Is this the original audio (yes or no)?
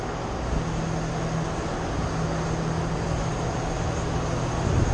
yes